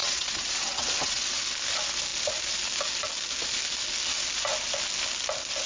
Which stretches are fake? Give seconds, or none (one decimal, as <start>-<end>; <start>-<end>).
0.0-1.3